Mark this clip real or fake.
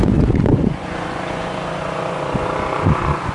fake